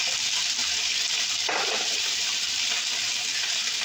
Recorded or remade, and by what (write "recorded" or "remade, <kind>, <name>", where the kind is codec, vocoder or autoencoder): recorded